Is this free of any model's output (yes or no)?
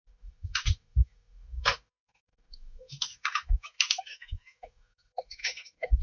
no